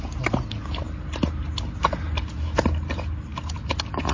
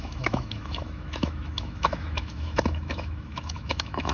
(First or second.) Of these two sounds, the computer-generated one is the second